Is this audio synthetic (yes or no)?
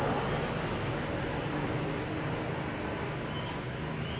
no